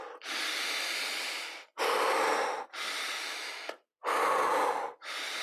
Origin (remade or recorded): recorded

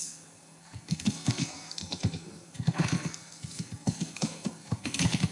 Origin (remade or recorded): remade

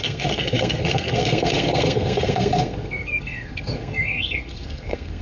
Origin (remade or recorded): remade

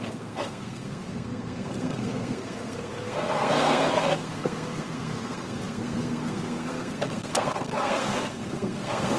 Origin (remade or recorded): remade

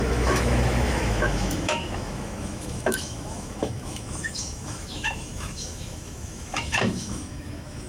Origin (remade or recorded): remade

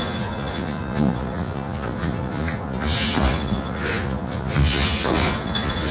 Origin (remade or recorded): remade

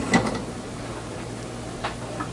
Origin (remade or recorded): recorded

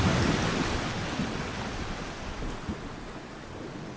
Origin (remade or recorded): recorded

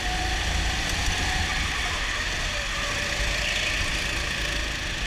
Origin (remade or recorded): recorded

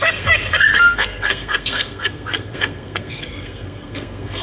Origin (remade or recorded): remade